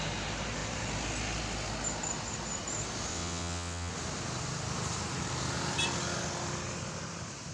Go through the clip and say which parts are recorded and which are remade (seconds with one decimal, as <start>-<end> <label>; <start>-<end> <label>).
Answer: 0.0-3.1 recorded; 3.1-3.9 remade; 3.9-7.5 recorded